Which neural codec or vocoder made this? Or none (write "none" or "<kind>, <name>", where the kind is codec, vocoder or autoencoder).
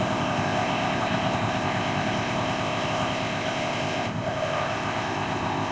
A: codec, ZipCodec